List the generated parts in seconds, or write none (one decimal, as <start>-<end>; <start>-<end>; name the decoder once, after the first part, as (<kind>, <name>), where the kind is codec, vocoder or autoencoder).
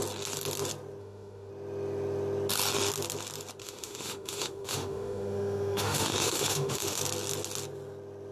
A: 1.0-1.5 (autoencoder, DAC-VAE); 3.6-7.0